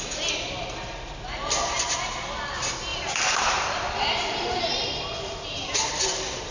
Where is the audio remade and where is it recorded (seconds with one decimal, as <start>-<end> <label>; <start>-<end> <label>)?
0.0-2.9 recorded; 2.9-5.9 remade; 5.9-6.5 recorded